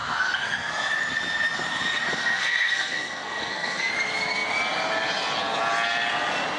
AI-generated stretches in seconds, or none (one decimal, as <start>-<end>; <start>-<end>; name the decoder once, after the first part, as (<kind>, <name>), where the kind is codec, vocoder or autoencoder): 0.0-0.7 (codec, SNAC); 2.2-3.9